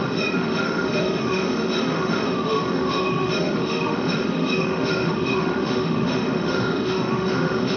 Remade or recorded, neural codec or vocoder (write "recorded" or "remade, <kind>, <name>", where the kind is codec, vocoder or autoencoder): remade, autoencoder, DAC-VAE